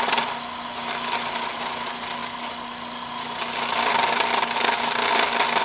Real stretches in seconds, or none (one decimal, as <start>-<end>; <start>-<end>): 0.0-5.6